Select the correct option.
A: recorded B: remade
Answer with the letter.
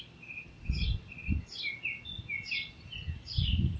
A